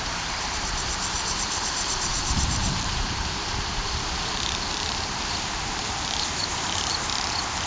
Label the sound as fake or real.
fake